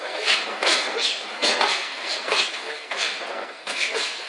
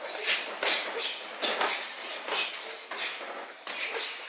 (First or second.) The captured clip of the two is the second